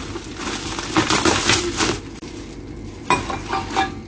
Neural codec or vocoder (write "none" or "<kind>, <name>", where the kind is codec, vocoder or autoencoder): none